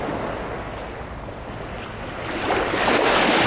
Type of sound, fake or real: real